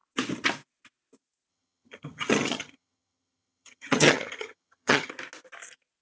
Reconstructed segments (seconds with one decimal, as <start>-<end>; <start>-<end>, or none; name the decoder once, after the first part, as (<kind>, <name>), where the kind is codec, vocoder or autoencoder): 1.5-5.1 (vocoder, HiFi-GAN)